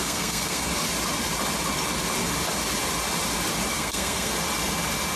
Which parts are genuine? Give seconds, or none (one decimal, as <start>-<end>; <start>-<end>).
0.7-3.7; 4.3-5.2